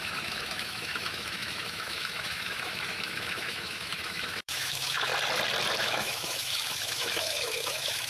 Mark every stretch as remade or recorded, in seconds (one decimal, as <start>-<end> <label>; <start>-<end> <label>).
0.0-5.1 remade; 5.1-5.8 recorded; 5.8-8.1 remade